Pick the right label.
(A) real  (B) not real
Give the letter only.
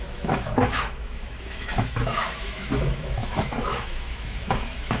B